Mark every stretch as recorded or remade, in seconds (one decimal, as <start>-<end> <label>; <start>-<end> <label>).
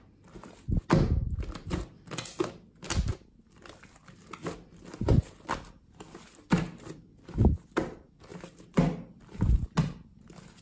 0.0-10.6 recorded